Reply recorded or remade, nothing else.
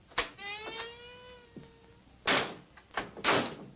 recorded